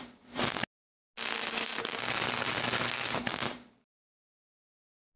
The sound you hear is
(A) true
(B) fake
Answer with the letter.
A